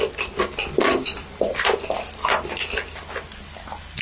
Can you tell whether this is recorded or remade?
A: recorded